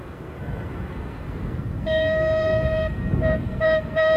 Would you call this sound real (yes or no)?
no